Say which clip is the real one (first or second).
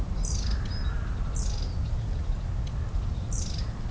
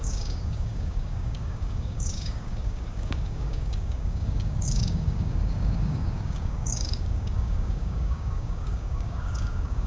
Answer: first